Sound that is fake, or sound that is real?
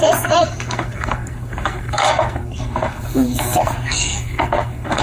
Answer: fake